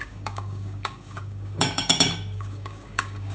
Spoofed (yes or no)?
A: yes